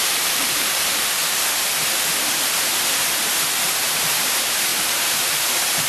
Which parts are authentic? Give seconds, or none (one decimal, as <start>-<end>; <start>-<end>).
1.2-2.2